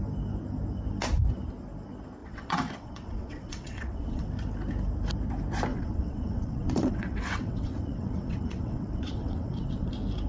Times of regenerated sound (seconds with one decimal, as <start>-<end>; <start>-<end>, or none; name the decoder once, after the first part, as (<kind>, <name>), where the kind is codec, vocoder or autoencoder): 2.2-4.3 (vocoder, WaveNeXt); 5.7-9.9